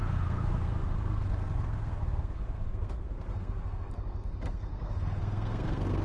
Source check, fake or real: fake